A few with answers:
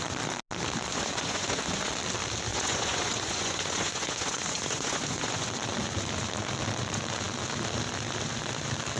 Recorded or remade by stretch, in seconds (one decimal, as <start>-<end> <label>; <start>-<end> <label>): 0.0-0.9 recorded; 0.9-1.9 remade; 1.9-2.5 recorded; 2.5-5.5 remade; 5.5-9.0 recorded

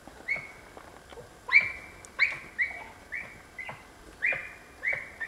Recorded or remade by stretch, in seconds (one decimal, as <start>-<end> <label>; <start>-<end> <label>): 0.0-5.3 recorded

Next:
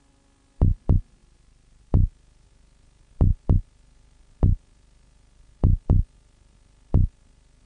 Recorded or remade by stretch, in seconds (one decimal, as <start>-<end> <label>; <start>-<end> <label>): 0.0-7.7 recorded

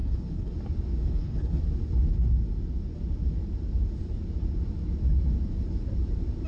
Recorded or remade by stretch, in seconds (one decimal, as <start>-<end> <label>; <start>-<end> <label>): 0.0-0.5 remade; 0.5-1.0 recorded; 1.0-1.6 remade; 1.6-6.5 recorded